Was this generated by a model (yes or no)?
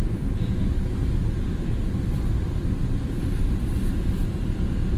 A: no